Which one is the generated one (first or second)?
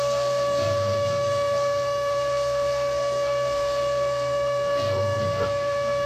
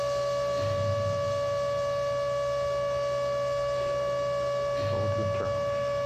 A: first